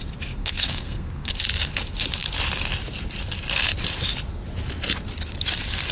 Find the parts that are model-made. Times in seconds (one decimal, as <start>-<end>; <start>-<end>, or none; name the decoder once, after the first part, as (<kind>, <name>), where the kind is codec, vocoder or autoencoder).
0.4-1.3 (codec, SNAC)

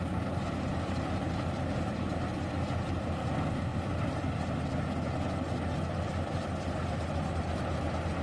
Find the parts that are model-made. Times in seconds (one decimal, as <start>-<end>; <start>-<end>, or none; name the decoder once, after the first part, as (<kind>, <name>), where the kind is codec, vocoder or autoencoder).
none